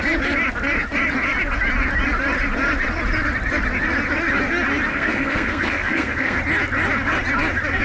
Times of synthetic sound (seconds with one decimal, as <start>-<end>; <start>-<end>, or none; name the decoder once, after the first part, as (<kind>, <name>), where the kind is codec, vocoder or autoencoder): 4.9-6.4 (codec, SNAC)